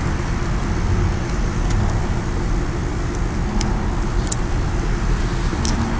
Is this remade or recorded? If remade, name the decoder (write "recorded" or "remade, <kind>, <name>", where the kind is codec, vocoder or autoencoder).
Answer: recorded